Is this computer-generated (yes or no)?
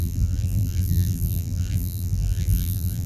yes